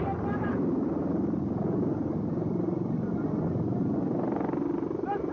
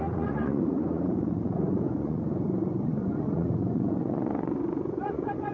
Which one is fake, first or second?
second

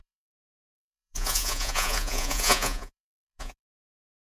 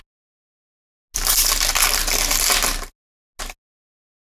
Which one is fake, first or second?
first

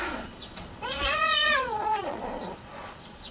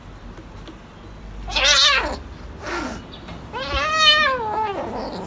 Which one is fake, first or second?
first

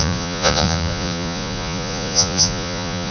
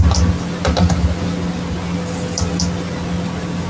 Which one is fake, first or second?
first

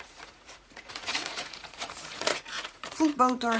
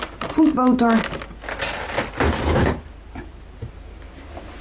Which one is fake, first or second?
first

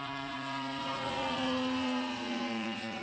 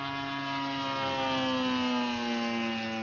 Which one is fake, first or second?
first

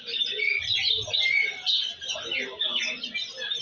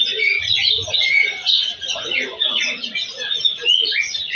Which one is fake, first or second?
second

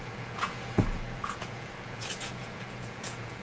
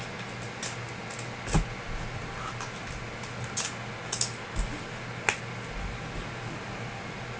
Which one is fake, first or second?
first